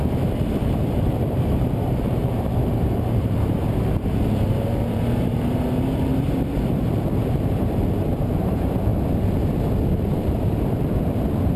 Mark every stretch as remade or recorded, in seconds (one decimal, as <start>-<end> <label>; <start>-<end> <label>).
0.0-8.9 remade; 8.9-10.1 recorded; 10.1-11.6 remade